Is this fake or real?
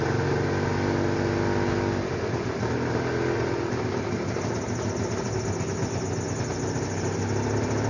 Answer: real